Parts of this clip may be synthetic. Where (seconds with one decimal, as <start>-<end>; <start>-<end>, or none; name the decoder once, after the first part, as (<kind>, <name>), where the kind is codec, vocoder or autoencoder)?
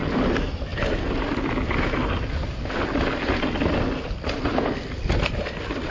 none